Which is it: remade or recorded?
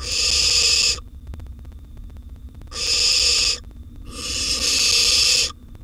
recorded